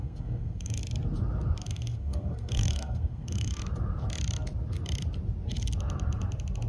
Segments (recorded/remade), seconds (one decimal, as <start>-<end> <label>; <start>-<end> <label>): 0.0-0.8 remade; 0.8-1.6 recorded; 1.6-3.6 remade; 3.6-6.7 recorded